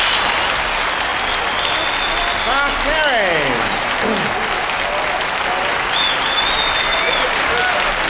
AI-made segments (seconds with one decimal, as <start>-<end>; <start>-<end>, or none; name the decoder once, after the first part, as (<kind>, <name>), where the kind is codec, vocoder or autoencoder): none